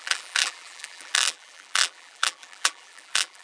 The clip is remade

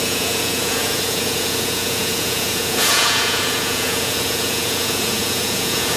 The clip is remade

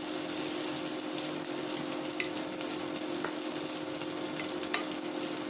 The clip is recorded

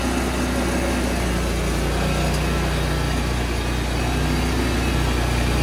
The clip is recorded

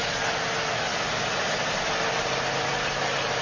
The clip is recorded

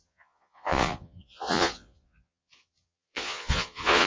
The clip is remade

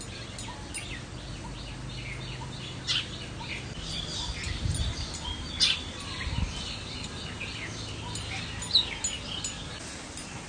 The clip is recorded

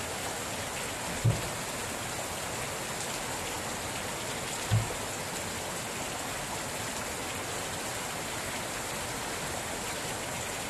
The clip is recorded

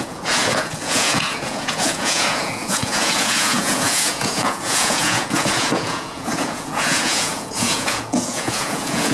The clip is remade